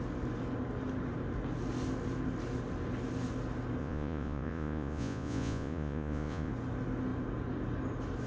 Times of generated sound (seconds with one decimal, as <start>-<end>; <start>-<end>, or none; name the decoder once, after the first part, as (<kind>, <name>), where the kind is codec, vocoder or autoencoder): 3.8-6.5 (vocoder, Vocos)